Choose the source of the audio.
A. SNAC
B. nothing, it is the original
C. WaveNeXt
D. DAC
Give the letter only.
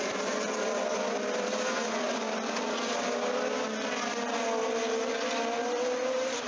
B